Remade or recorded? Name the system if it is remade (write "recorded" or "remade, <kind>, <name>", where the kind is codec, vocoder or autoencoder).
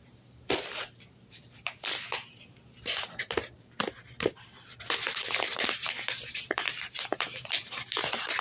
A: remade, vocoder, BigVGAN v2